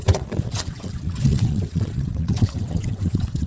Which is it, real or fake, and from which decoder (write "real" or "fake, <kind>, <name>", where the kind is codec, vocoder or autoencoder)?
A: fake, vocoder, WaveNeXt